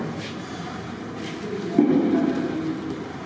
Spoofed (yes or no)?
no